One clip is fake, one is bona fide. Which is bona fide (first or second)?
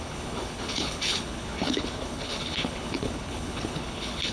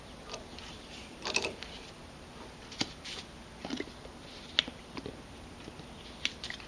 second